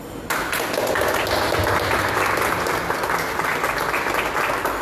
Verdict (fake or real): real